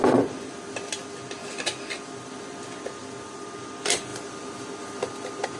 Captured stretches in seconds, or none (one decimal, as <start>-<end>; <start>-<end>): 0.0-5.6